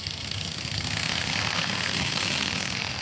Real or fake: fake